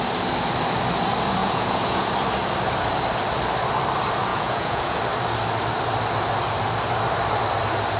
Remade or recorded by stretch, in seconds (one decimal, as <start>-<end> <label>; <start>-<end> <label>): 0.0-1.4 recorded; 1.4-2.1 remade; 2.1-4.3 recorded; 4.3-5.0 remade; 5.0-8.0 recorded

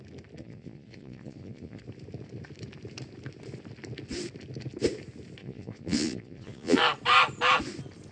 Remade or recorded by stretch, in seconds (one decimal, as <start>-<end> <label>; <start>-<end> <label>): 0.0-0.4 recorded; 0.4-1.8 remade; 1.8-5.4 recorded; 5.4-6.8 remade; 6.8-8.1 recorded

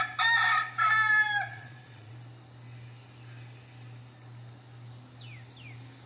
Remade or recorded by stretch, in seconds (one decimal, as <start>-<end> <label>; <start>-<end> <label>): 0.0-1.5 recorded; 1.5-2.1 remade; 2.1-6.1 recorded

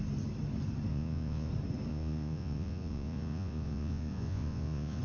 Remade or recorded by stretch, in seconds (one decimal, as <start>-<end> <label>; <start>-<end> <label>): 0.0-0.9 recorded; 0.9-1.5 remade; 1.5-1.9 recorded; 1.9-5.0 remade

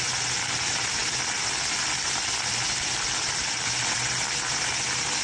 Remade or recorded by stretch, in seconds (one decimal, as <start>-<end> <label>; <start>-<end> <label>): 0.0-5.2 recorded

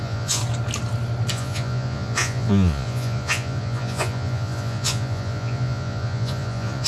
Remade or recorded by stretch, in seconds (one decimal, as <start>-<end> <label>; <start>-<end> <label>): 0.0-0.4 remade; 0.4-1.3 recorded; 1.3-6.9 remade